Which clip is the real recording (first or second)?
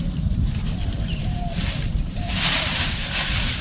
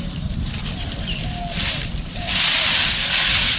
second